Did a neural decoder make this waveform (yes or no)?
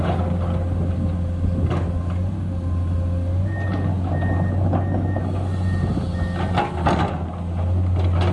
no